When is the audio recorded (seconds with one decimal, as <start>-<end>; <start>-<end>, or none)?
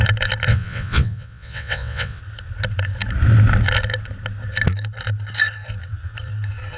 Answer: 0.0-0.5; 2.2-6.8